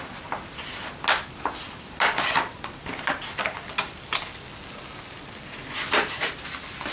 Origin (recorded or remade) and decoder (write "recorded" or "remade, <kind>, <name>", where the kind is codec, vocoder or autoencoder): recorded